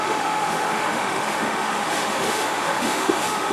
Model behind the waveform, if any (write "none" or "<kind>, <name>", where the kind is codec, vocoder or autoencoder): autoencoder, DAC-VAE